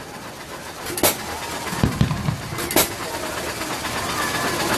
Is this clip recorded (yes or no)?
yes